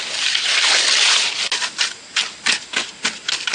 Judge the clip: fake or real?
real